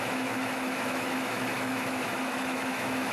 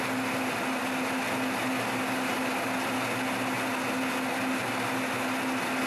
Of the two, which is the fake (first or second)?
first